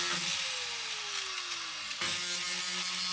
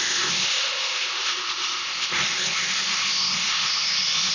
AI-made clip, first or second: second